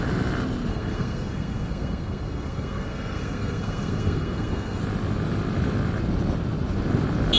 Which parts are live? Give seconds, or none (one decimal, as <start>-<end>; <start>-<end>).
0.0-0.7; 4.8-7.4